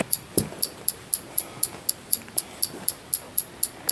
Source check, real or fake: real